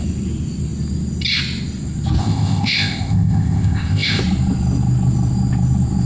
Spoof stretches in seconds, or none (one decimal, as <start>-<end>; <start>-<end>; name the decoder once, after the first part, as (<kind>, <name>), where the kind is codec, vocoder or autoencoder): 2.2-4.2 (codec, ZipCodec)